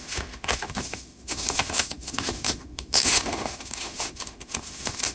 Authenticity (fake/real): fake